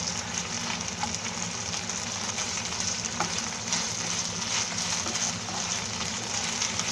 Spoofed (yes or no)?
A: no